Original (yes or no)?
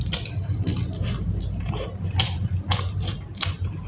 no